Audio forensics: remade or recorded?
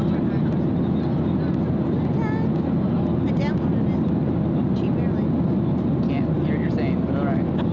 recorded